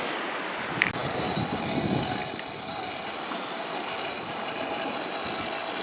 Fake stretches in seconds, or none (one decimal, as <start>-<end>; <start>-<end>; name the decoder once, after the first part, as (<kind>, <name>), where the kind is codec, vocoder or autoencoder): none